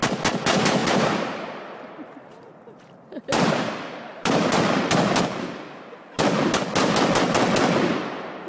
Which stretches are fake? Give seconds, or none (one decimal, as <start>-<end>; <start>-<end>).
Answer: 0.8-4.6